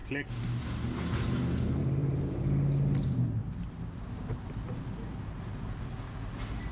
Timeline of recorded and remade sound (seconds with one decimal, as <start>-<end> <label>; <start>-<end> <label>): 0.0-0.6 remade; 0.6-1.8 recorded; 1.8-2.4 remade; 2.4-6.7 recorded

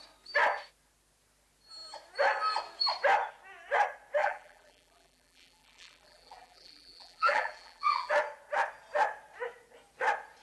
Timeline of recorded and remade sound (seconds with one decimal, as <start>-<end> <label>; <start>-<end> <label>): 0.0-4.2 recorded; 4.2-8.1 remade; 8.1-10.4 recorded

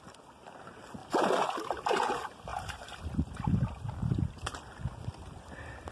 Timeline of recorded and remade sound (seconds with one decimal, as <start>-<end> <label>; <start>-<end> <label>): 0.0-2.5 recorded; 2.5-3.1 remade; 3.1-5.9 recorded

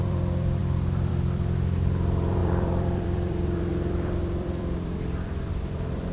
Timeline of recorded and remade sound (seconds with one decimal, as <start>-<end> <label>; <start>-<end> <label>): 0.0-6.1 remade

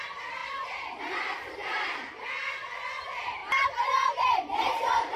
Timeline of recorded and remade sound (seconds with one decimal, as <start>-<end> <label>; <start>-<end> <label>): 0.0-0.4 recorded; 0.4-1.0 remade; 1.0-1.6 recorded; 1.6-2.1 remade; 2.1-3.4 recorded; 3.4-5.2 remade

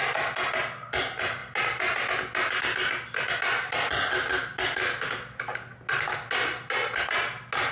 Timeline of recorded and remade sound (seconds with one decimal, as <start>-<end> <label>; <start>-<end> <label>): 0.0-7.7 recorded

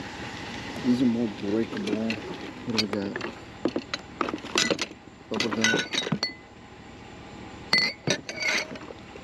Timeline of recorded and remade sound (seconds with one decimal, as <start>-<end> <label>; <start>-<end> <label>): 0.0-2.6 remade; 2.6-7.7 recorded; 7.7-9.2 remade

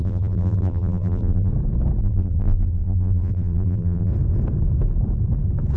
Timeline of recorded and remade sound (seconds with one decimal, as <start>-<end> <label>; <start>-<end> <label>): 0.0-1.5 remade; 1.5-2.0 recorded; 2.0-4.1 remade; 4.1-5.8 recorded